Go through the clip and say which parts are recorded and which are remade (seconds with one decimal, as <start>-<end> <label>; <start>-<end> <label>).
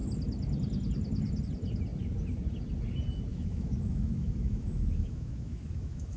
0.0-3.3 recorded; 3.3-6.2 remade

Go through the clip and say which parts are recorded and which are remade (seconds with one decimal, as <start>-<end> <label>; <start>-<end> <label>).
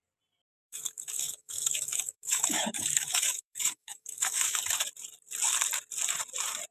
0.0-0.6 recorded; 0.6-4.6 remade; 4.6-6.7 recorded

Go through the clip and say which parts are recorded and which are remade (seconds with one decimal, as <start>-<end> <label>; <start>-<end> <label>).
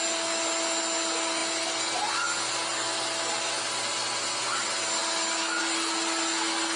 0.0-6.8 recorded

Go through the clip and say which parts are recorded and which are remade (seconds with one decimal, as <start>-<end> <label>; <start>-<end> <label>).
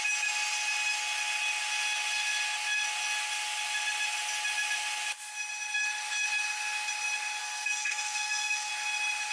0.0-7.4 recorded; 7.4-8.7 remade; 8.7-9.3 recorded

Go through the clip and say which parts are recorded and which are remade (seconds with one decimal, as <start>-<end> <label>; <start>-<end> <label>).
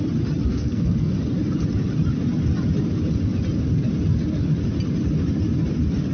0.0-0.5 recorded; 0.5-1.1 remade; 1.1-6.1 recorded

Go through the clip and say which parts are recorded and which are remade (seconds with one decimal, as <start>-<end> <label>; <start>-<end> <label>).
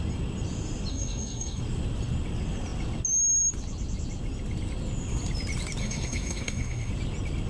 0.0-0.9 recorded; 0.9-1.6 remade; 1.6-5.8 recorded; 5.8-6.9 remade; 6.9-7.5 recorded